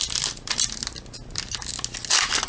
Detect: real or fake real